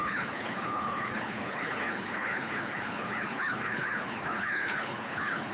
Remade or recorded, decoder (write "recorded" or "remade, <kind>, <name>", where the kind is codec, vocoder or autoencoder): remade, codec, HILCodec